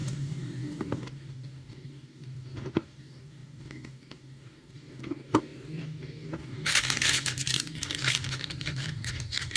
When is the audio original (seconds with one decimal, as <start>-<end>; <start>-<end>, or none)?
none